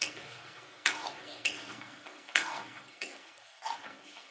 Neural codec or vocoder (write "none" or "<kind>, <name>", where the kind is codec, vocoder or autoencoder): codec, SNAC